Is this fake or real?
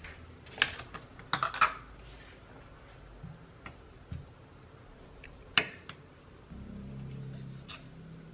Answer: real